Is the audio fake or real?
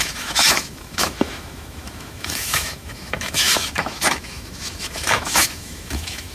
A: fake